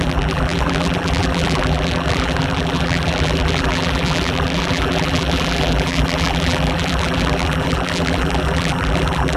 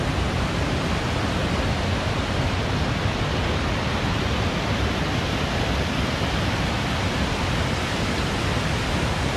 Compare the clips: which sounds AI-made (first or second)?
first